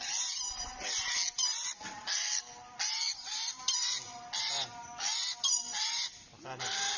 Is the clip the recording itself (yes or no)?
yes